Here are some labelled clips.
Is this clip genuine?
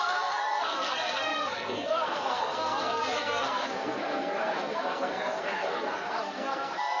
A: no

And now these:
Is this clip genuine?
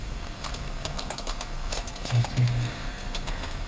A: no